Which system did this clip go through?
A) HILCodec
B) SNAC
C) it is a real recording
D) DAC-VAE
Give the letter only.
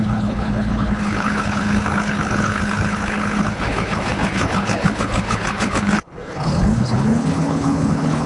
A